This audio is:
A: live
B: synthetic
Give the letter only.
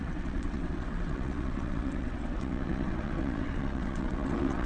B